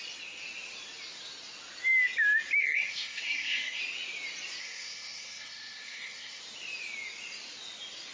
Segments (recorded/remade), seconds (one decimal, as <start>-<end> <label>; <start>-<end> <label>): 0.0-2.6 recorded; 2.6-3.8 remade; 3.8-4.6 recorded; 4.6-6.4 remade; 6.4-8.1 recorded